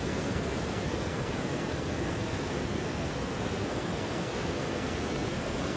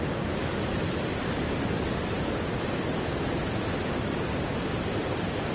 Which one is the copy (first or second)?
first